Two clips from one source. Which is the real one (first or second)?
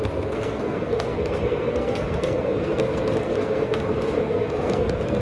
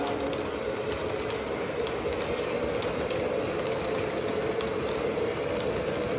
second